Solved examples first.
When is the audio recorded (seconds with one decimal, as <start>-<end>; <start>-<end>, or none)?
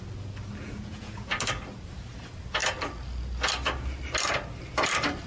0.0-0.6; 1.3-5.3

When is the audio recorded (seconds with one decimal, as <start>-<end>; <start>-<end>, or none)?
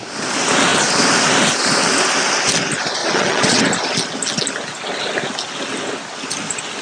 0.0-3.0; 3.6-6.8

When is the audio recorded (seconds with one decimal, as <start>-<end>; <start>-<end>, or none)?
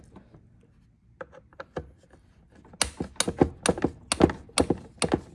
0.0-5.3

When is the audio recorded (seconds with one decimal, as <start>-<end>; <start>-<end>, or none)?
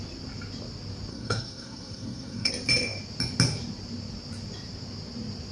0.0-1.1; 2.5-5.5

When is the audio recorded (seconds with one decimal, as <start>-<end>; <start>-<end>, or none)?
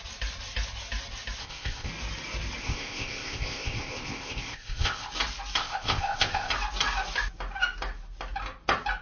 0.0-1.4; 1.9-2.6; 5.1-5.6; 6.5-9.0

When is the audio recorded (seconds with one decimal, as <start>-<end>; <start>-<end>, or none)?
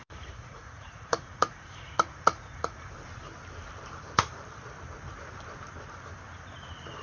2.9-7.0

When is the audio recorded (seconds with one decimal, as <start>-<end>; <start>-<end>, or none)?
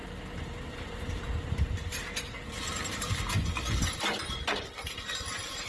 0.0-0.7